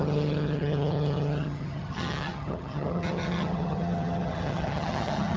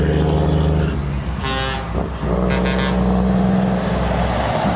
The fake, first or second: first